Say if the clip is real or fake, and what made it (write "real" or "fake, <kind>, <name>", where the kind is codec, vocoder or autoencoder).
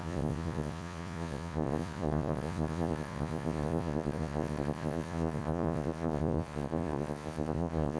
fake, vocoder, Vocos